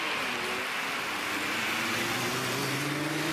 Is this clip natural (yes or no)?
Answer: yes